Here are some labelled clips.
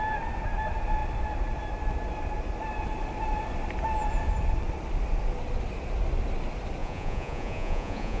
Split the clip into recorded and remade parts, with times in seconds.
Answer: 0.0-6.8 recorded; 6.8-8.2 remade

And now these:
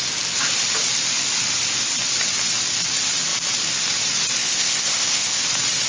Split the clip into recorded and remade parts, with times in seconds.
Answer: 0.0-4.4 recorded; 4.4-5.4 remade; 5.4-5.9 recorded

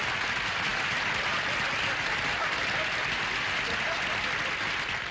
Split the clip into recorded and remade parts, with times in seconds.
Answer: 0.0-5.1 recorded

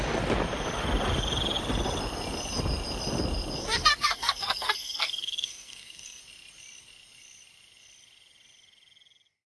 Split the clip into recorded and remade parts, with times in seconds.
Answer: 0.0-3.6 recorded; 3.6-6.2 remade; 6.2-9.5 recorded